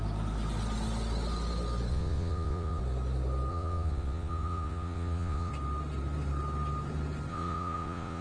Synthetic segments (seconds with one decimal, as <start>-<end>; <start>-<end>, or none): 1.9-2.8; 3.5-5.5; 7.3-8.2